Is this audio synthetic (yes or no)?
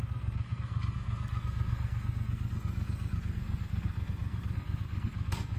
yes